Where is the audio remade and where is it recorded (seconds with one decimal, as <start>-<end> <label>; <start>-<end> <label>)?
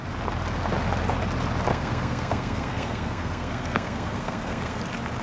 0.0-1.7 recorded; 1.7-4.8 remade; 4.8-5.2 recorded